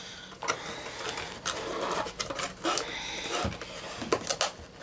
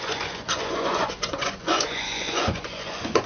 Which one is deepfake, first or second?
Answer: second